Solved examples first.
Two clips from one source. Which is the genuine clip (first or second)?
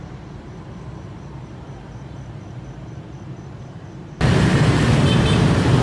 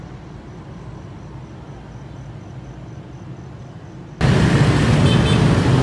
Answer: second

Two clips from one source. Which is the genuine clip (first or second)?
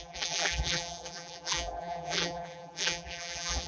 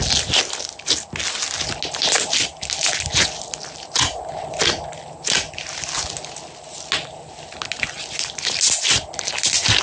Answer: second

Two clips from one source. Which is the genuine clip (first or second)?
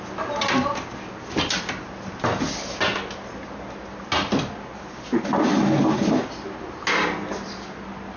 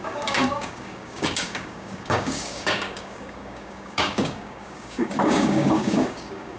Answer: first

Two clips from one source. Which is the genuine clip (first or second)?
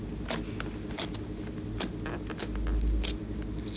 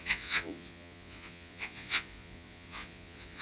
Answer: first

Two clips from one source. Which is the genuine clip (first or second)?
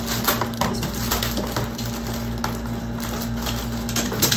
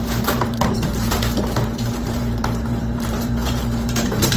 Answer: first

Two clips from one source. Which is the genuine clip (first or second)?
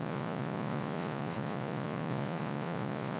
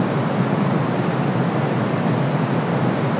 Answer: second